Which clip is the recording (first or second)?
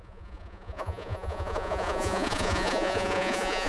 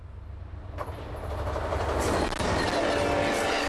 second